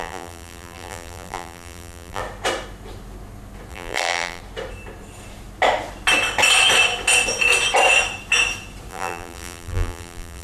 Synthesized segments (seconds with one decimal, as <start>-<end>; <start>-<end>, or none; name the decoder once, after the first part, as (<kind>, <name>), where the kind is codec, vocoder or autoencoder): 0.0-2.2 (vocoder, BigVGAN v2); 3.7-4.4; 8.9-10.4